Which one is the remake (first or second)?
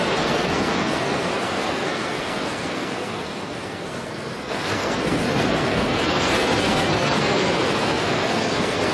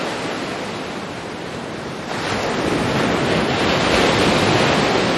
first